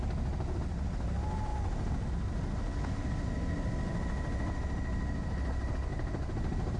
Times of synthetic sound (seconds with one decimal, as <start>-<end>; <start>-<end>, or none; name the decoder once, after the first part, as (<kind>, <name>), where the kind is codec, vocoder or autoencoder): 5.9-6.8 (vocoder, BigVGAN v2)